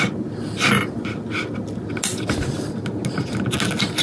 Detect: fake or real real